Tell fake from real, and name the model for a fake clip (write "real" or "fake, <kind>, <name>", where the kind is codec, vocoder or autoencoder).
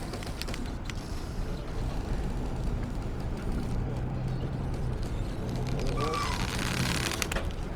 fake, vocoder, BigVGAN v2